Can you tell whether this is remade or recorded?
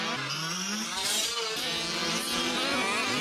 recorded